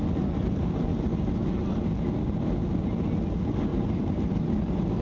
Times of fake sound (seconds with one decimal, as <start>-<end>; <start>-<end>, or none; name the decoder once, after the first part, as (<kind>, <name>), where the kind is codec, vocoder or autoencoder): none